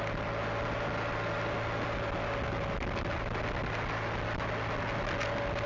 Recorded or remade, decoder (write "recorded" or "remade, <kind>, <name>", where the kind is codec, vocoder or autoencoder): recorded